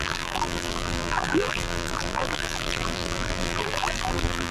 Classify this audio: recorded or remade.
remade